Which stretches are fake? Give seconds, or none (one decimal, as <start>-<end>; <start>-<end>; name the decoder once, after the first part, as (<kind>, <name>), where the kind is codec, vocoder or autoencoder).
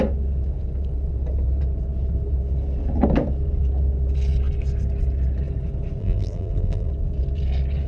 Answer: 6.0-6.9 (vocoder, BigVGAN v2)